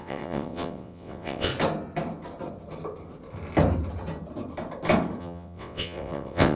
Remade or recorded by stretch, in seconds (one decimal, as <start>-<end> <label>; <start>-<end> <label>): 0.0-1.5 remade; 1.5-5.2 recorded; 5.2-6.6 remade